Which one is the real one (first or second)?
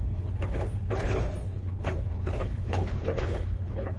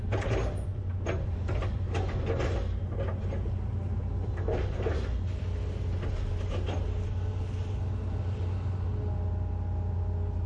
second